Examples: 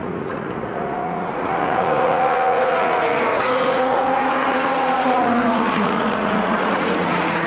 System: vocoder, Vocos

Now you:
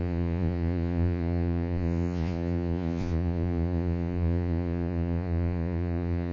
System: vocoder, Vocos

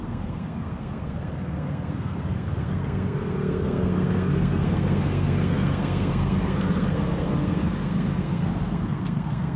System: codec, SNAC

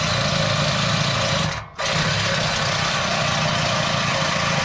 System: none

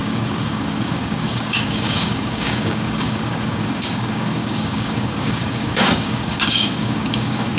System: codec, DAC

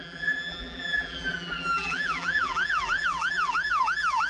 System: vocoder, BigVGAN v2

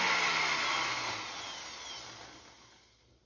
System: none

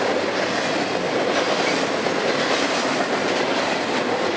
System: none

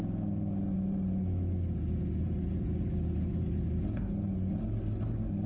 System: none